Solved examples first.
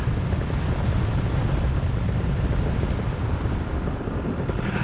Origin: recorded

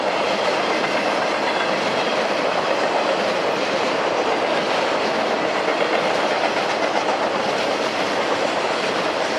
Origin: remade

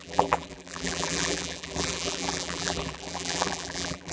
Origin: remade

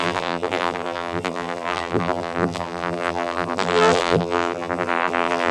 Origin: remade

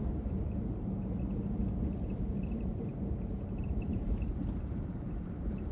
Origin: remade